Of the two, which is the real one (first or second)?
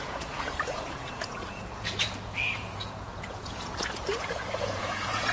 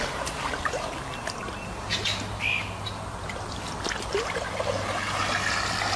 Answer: second